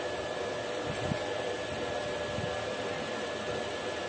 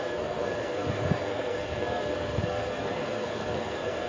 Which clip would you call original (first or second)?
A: first